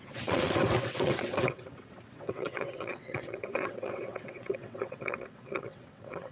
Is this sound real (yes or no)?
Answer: no